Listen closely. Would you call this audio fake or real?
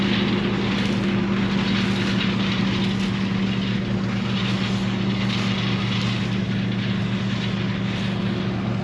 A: real